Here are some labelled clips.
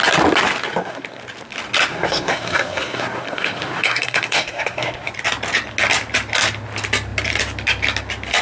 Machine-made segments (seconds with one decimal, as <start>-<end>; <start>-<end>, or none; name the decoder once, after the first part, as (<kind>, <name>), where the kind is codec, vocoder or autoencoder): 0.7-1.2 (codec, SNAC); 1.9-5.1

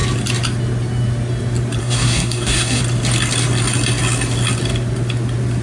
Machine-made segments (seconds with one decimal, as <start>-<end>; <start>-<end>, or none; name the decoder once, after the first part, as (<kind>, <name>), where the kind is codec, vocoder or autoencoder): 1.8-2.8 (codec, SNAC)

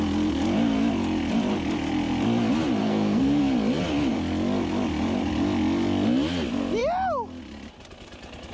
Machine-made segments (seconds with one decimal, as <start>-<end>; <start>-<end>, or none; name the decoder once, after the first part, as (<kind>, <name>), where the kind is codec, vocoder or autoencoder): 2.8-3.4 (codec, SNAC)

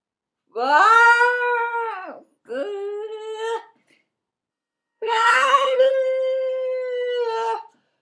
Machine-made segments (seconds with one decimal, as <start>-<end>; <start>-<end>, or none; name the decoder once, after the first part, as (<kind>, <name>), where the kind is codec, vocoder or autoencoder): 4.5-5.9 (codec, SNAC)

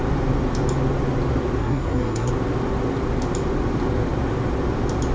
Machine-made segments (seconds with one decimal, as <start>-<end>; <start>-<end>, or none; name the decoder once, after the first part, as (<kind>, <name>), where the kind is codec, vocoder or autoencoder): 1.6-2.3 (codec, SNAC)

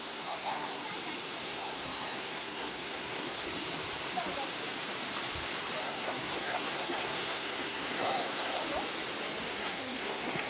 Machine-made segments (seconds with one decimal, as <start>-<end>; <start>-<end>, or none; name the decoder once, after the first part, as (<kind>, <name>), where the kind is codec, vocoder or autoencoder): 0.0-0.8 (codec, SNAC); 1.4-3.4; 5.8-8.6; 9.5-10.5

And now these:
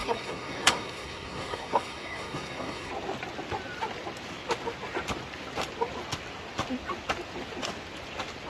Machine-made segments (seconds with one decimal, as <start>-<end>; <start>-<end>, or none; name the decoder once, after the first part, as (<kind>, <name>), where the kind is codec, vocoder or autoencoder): 0.0-2.9 (codec, SNAC)